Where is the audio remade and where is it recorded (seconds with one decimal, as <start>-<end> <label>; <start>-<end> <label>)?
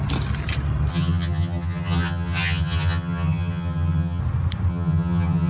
0.0-0.9 recorded; 0.9-4.2 remade; 4.2-4.7 recorded; 4.7-5.5 remade